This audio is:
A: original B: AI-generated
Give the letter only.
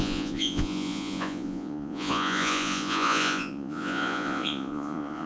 B